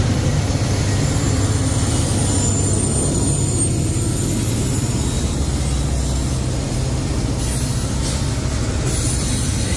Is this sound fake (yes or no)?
no